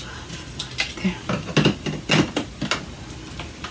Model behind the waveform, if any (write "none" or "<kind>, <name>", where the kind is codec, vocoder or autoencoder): none